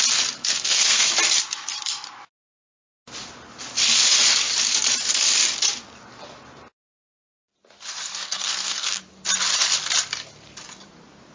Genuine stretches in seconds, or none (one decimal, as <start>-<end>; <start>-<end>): 0.0-0.4; 1.1-8.1; 9.0-11.3